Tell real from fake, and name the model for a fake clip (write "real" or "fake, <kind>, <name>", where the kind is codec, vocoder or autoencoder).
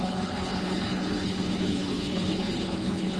fake, codec, HILCodec